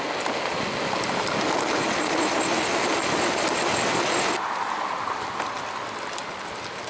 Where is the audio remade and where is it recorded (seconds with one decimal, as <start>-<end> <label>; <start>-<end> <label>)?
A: 0.0-6.9 recorded

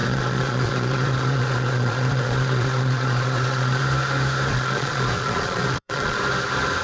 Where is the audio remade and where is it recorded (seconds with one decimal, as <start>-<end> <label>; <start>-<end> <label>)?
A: 0.0-3.8 remade; 3.8-4.5 recorded; 4.5-6.2 remade; 6.2-6.8 recorded

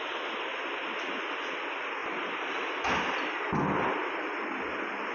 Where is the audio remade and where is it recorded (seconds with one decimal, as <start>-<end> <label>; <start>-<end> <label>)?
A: 0.0-5.1 recorded

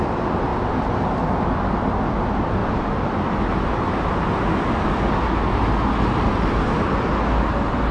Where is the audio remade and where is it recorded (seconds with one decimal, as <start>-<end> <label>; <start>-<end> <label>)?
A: 0.0-7.9 recorded

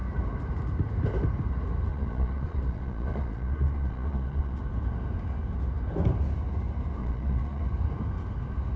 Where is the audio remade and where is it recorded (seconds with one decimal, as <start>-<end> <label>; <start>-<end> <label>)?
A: 0.0-1.9 recorded; 1.9-4.6 remade; 4.6-7.0 recorded; 7.0-7.6 remade; 7.6-8.8 recorded

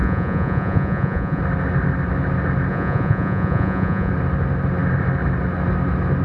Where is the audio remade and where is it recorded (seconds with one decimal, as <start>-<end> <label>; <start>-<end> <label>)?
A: 0.0-1.4 remade; 1.4-2.7 recorded; 2.7-4.1 remade; 4.1-6.2 recorded

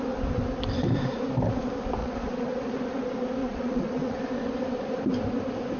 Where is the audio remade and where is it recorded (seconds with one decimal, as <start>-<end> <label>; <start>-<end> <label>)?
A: 0.0-2.0 recorded; 2.0-2.8 remade; 2.8-3.4 recorded; 3.4-4.2 remade; 4.2-5.8 recorded

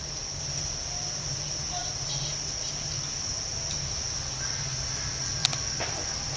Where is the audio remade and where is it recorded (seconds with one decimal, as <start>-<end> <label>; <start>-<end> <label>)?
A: 0.0-6.4 recorded